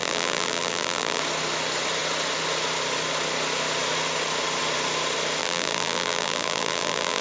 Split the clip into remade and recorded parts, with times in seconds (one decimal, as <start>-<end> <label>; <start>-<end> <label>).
0.0-1.2 remade; 1.2-5.4 recorded; 5.4-7.2 remade